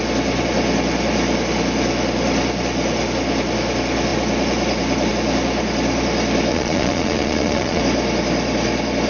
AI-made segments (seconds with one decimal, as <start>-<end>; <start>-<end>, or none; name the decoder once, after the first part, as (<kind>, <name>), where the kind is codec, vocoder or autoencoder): 6.5-7.8 (vocoder, Vocos)